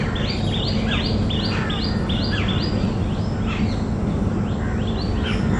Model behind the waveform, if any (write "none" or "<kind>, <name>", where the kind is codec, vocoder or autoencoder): none